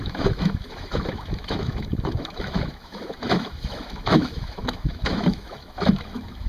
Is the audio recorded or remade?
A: remade